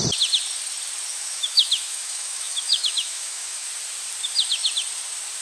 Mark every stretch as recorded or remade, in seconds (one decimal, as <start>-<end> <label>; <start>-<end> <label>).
0.0-1.1 recorded; 1.1-3.7 remade; 3.7-5.4 recorded